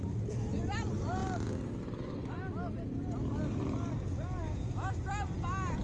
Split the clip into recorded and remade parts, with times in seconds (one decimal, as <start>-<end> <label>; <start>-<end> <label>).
0.0-5.8 recorded